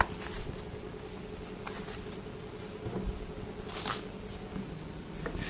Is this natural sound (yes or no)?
yes